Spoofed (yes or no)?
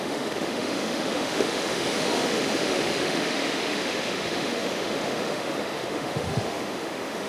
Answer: yes